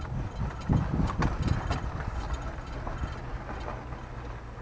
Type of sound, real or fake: real